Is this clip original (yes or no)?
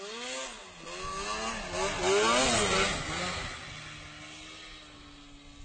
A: yes